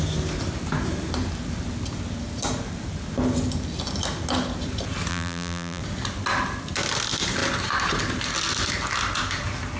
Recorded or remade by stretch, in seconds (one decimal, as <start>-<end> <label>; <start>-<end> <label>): 0.0-5.1 recorded; 5.1-5.8 remade; 5.8-9.8 recorded